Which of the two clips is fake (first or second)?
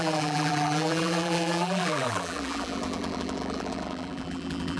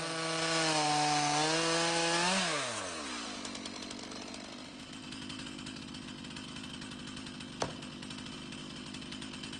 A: first